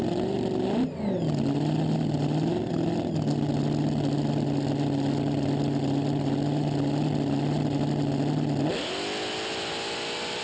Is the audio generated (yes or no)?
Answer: no